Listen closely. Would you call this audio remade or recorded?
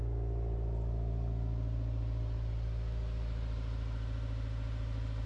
recorded